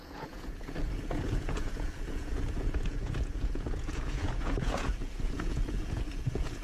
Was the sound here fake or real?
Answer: fake